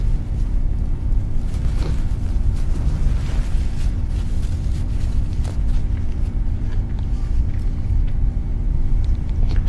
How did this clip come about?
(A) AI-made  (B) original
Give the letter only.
A